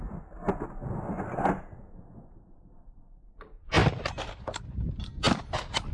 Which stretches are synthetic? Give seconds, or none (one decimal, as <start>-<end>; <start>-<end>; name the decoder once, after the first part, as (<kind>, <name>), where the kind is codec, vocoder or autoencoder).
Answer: none